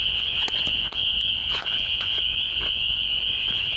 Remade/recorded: remade